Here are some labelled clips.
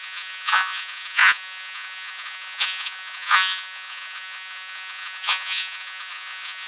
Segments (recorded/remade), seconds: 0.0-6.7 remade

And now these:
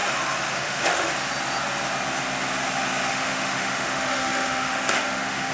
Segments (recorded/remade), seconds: 0.0-0.5 recorded; 0.5-1.1 remade; 1.1-3.1 recorded; 3.1-5.5 remade

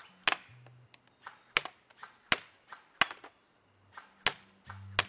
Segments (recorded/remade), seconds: 0.0-5.1 recorded

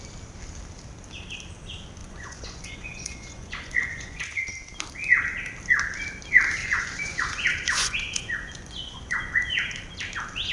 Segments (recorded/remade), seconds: 0.0-2.0 recorded; 2.0-4.4 remade; 4.4-6.6 recorded; 6.6-9.5 remade; 9.5-10.5 recorded

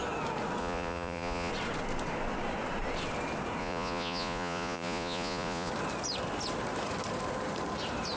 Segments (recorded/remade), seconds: 0.0-0.6 recorded; 0.6-1.5 remade; 1.5-3.6 recorded; 3.6-5.7 remade; 5.7-8.2 recorded

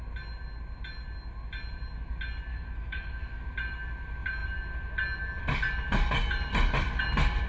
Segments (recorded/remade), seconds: 0.0-2.5 recorded; 2.5-3.4 remade; 3.4-7.5 recorded

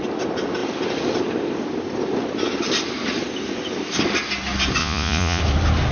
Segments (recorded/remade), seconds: 0.0-4.8 recorded; 4.8-5.4 remade; 5.4-5.9 recorded

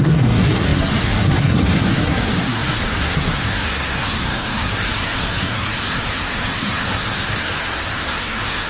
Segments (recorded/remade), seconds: 0.0-8.7 remade